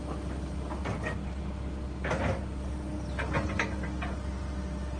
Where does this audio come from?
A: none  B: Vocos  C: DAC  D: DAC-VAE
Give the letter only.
A